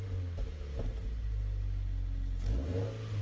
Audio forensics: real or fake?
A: real